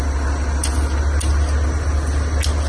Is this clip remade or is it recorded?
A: recorded